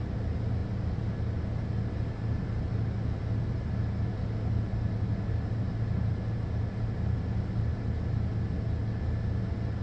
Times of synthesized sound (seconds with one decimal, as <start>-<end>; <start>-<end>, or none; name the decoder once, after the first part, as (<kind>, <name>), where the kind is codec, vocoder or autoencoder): none